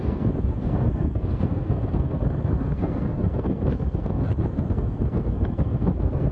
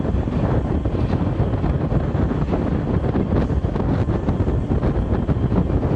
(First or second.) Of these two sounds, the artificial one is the first